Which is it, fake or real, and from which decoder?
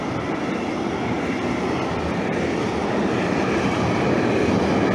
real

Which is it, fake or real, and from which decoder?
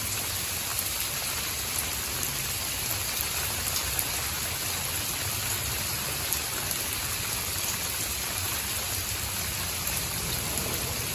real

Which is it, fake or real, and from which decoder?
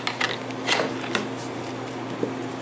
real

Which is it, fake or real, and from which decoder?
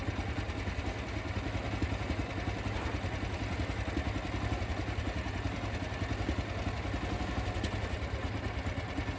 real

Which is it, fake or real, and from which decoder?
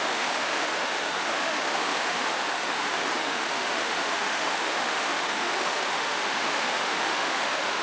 fake, autoencoder, DAC-VAE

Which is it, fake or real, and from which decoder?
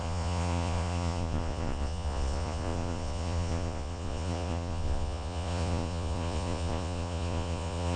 fake, vocoder, Vocos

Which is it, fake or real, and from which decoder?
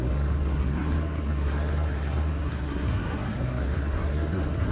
fake, codec, SNAC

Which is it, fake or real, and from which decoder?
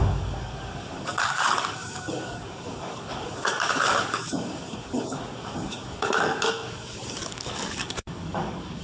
fake, codec, DAC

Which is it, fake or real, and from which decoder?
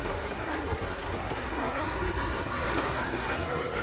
fake, codec, SNAC